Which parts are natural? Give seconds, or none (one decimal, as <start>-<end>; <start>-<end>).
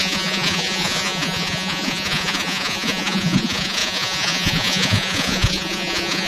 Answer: none